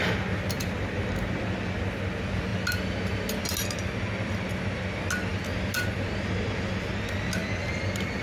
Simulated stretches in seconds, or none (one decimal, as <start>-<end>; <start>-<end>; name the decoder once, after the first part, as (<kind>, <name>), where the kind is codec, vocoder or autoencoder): none